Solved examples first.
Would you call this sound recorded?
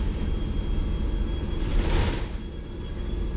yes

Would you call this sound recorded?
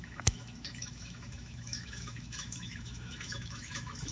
no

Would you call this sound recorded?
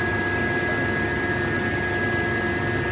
yes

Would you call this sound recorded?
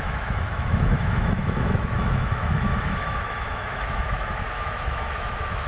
no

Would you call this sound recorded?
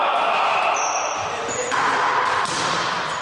yes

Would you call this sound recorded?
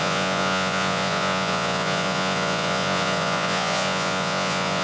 no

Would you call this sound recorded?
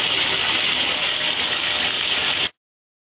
yes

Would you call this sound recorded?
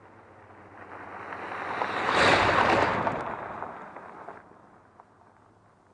yes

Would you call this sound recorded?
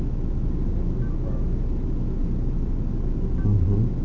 yes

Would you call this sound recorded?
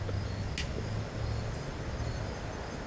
yes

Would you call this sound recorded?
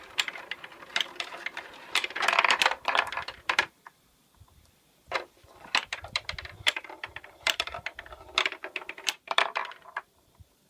no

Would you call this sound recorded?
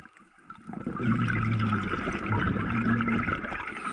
yes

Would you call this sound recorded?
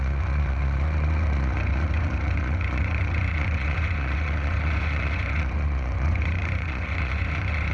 no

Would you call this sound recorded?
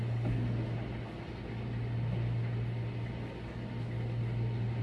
yes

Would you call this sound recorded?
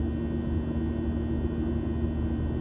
yes